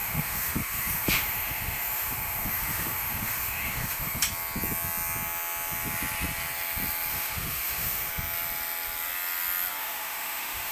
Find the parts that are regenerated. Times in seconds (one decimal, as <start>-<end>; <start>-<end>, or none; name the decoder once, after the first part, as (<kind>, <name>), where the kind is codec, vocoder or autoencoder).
0.0-4.2 (autoencoder, DAC-VAE); 7.1-8.1; 9.8-10.7